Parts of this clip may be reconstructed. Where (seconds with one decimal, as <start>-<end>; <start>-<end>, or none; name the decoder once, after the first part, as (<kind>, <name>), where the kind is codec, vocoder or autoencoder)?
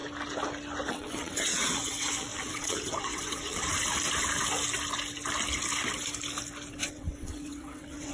0.9-3.7 (vocoder, WaveNeXt); 6.7-8.1